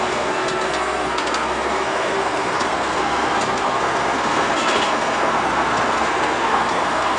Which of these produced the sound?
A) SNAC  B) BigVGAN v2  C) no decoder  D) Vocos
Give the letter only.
A